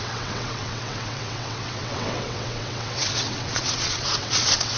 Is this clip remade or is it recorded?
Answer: remade